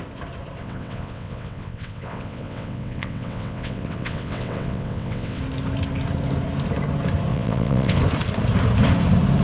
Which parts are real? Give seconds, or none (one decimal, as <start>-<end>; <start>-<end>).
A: 0.0-0.6; 5.4-7.3; 8.0-9.4